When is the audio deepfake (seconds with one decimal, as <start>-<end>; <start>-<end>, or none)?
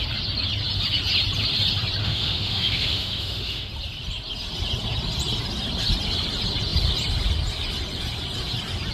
2.0-3.7